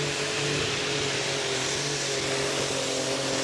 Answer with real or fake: real